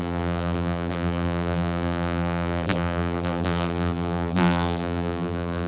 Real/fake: fake